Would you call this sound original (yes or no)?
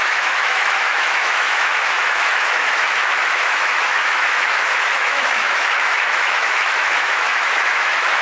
no